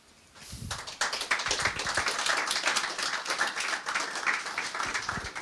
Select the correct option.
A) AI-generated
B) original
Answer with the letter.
B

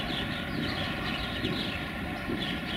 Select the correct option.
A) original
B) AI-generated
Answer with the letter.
A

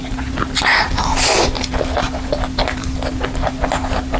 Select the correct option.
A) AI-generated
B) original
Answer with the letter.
B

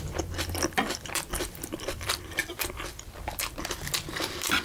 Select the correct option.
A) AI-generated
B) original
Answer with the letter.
A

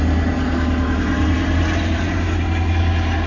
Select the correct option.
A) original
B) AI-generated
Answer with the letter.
A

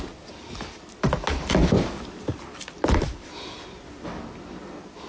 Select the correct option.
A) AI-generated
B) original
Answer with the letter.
B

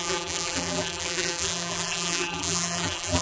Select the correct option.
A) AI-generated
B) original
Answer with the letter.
A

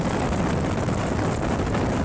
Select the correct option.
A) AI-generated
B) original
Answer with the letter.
B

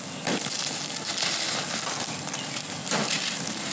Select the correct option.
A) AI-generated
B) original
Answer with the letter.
B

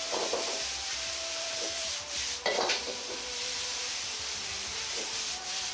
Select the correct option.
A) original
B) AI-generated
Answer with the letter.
B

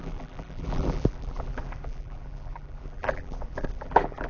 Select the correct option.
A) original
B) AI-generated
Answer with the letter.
B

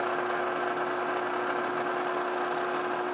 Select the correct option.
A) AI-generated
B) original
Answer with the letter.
B